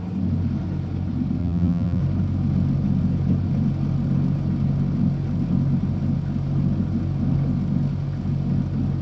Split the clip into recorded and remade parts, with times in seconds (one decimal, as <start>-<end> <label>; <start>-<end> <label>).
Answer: 0.0-1.4 recorded; 1.4-2.0 remade; 2.0-9.0 recorded